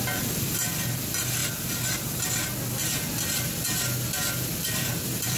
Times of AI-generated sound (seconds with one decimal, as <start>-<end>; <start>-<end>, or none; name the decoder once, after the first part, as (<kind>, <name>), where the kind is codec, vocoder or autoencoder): 0.0-1.4 (vocoder, BigVGAN v2); 4.6-5.4